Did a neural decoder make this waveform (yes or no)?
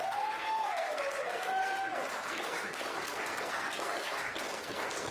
yes